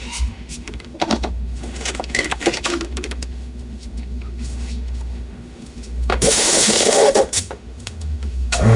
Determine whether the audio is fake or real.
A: fake